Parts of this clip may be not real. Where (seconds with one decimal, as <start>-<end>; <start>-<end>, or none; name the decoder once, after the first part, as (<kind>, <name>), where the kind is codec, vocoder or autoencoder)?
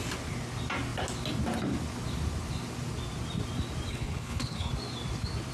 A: 3.9-4.7 (codec, HILCodec)